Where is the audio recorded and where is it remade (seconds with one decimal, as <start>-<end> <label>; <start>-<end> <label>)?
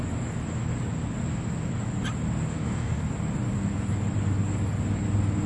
0.0-2.5 recorded; 2.5-3.0 remade; 3.0-5.5 recorded